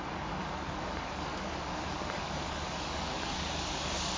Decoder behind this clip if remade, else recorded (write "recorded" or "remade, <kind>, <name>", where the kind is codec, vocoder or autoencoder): remade, codec, DAC